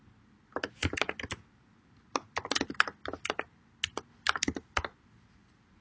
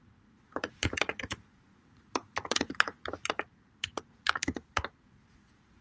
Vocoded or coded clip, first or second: second